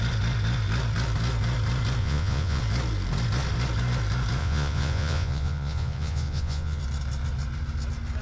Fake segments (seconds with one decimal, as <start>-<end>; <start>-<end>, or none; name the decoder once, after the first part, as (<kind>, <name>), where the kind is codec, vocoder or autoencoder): 2.0-2.6 (vocoder, Vocos); 4.4-6.8